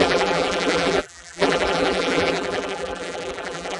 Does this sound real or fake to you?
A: fake